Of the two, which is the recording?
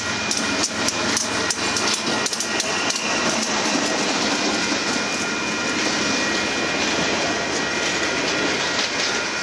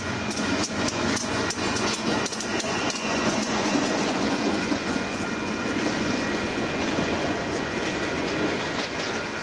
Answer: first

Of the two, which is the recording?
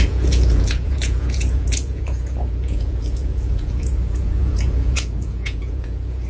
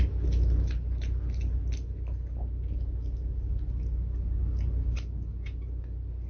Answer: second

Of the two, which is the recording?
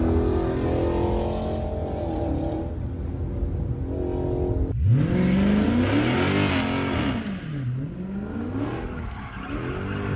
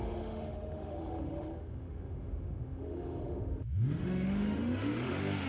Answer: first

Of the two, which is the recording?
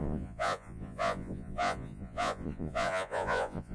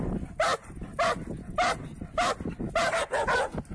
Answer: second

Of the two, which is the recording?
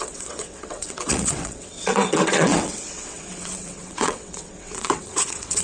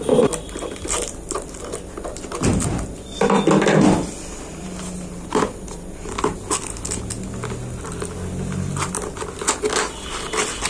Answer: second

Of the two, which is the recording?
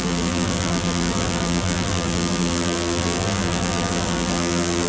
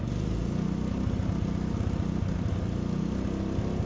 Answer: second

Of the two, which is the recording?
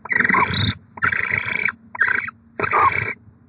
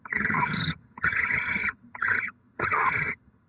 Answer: first